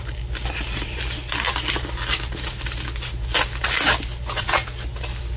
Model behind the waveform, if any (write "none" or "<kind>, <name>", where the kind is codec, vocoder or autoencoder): none